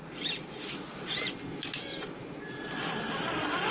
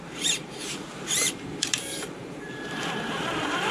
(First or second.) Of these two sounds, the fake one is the second